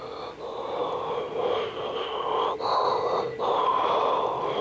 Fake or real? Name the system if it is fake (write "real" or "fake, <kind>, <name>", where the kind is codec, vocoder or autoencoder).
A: real